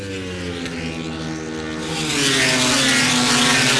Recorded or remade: recorded